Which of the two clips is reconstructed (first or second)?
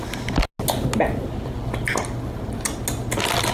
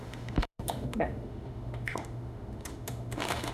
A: second